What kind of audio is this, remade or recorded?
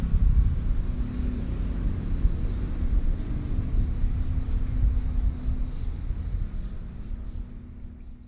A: recorded